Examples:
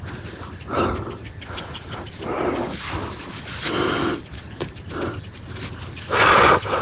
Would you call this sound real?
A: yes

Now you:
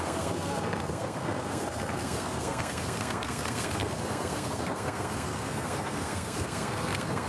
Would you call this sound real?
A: no